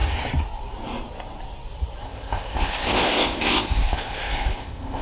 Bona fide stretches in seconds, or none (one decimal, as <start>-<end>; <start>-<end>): 0.0-2.0